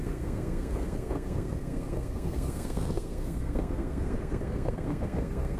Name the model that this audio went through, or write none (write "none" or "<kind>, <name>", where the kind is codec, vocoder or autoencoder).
codec, SNAC